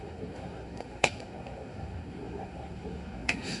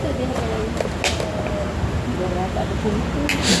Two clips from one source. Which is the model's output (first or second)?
first